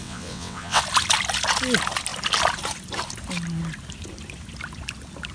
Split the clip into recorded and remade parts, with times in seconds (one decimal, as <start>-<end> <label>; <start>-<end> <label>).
0.0-0.8 remade; 0.8-5.3 recorded